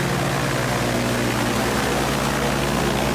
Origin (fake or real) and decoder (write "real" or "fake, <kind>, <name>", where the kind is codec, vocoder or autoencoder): real